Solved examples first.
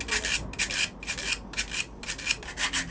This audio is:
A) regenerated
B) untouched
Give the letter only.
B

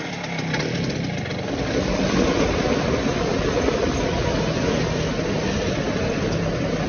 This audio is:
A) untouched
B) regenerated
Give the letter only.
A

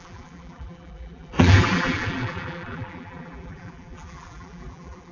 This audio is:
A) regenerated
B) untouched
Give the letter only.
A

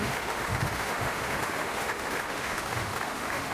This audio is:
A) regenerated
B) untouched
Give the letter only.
A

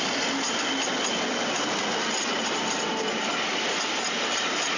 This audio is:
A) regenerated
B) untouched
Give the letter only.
B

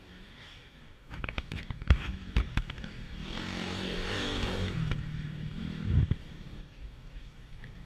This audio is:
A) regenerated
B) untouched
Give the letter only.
A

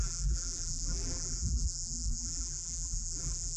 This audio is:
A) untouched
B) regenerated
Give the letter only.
B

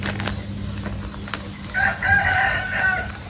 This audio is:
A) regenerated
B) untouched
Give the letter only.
B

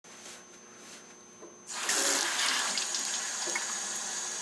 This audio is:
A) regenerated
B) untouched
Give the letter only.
B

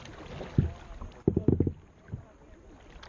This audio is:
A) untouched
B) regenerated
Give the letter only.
A